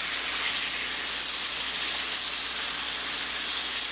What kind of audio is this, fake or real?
real